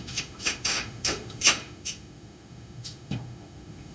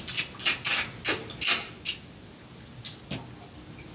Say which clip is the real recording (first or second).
second